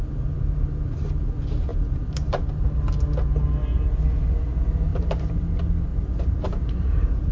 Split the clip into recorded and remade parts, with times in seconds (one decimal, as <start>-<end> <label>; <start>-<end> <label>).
0.0-1.7 recorded; 1.7-2.4 remade; 2.4-4.9 recorded; 4.9-5.5 remade; 5.5-5.9 recorded; 5.9-7.3 remade